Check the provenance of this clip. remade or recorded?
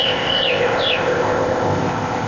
remade